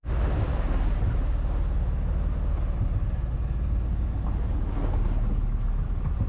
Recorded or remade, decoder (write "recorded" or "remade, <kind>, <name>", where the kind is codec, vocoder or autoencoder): recorded